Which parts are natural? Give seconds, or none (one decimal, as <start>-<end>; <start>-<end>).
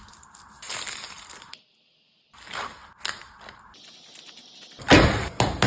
0.0-5.7